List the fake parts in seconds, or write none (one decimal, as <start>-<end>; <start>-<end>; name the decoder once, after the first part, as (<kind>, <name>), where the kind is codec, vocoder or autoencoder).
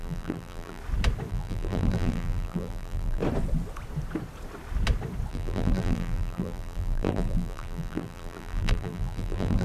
0.0-0.8 (vocoder, BigVGAN v2); 1.3-3.2; 5.3-9.6